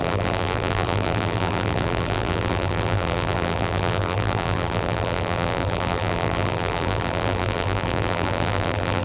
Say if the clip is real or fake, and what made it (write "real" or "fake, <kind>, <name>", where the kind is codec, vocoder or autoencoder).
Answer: fake, vocoder, BigVGAN v2